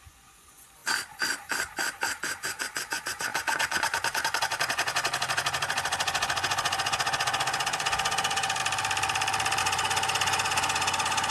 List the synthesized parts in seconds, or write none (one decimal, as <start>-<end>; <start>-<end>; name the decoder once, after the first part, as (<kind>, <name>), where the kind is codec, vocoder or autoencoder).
0.0-0.8 (vocoder, Vocos); 2.6-8.6; 9.6-11.3